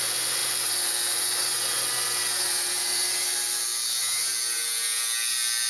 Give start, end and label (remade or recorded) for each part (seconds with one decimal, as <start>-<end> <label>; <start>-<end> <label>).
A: 0.0-5.7 recorded